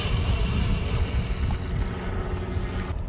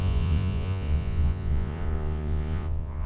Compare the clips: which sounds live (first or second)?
first